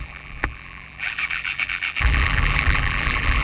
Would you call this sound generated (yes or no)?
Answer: yes